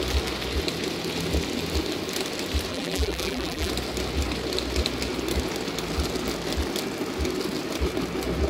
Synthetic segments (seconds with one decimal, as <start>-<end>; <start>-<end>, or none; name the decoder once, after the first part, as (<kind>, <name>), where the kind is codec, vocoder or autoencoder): 2.7-3.7 (vocoder, BigVGAN v2)

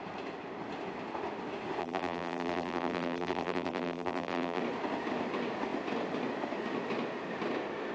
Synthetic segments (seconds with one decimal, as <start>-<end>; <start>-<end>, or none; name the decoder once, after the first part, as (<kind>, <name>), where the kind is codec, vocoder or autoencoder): 1.8-4.6 (vocoder, BigVGAN v2)

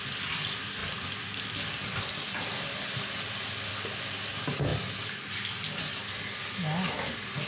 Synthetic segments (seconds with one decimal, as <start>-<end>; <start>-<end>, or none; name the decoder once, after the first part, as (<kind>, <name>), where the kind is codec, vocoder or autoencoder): none

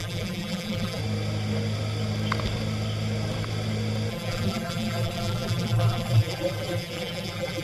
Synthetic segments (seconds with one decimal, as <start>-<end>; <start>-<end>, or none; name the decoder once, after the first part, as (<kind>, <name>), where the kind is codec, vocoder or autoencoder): 0.0-1.0 (vocoder, BigVGAN v2); 4.1-7.6

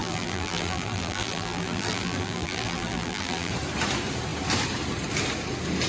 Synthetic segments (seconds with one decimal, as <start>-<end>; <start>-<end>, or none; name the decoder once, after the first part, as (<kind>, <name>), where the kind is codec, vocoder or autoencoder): 0.0-3.5 (vocoder, BigVGAN v2)

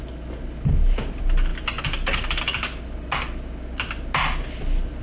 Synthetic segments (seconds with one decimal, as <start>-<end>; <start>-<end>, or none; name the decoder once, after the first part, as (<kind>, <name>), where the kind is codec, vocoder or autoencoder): none

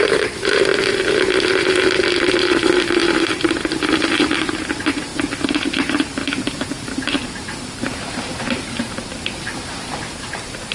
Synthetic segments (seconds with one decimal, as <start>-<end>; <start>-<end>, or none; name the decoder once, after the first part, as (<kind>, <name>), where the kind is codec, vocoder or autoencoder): 0.0-0.7 (vocoder, BigVGAN v2); 2.4-10.7